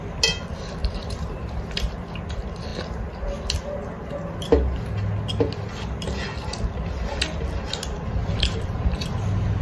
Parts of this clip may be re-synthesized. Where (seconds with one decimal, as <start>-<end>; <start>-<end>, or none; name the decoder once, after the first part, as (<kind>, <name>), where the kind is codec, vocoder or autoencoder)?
0.8-1.7 (vocoder, BigVGAN v2); 8.2-9.2